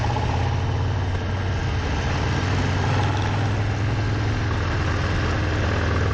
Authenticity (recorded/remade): recorded